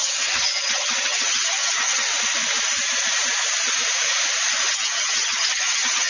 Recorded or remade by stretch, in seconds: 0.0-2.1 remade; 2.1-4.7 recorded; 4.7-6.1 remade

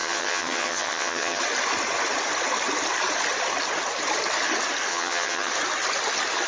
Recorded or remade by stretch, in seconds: 0.0-1.4 remade; 1.4-4.9 recorded; 4.9-5.5 remade; 5.5-6.5 recorded

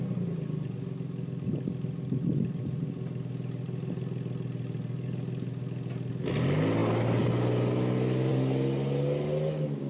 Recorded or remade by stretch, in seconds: 0.0-9.9 recorded

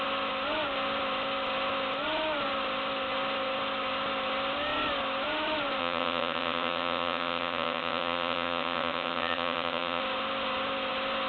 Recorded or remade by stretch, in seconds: 0.0-5.8 recorded; 5.8-10.0 remade; 10.0-11.3 recorded

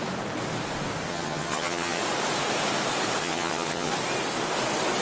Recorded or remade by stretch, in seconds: 0.0-1.1 recorded; 1.1-2.0 remade; 2.0-3.2 recorded; 3.2-3.9 remade; 3.9-5.0 recorded

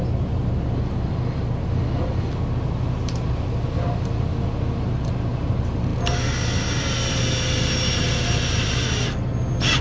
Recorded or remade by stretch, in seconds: 0.0-9.8 recorded

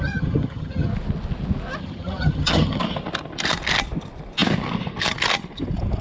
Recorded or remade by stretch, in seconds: 0.0-0.9 remade; 0.9-1.8 recorded; 1.8-2.8 remade; 2.8-6.0 recorded

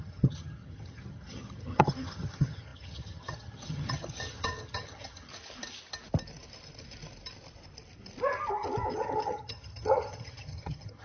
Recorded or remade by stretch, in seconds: 0.0-5.3 remade; 5.3-8.9 recorded; 8.9-11.0 remade